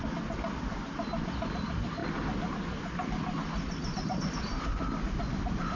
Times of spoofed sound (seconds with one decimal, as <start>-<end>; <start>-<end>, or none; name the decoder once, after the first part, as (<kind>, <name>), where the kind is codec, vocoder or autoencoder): none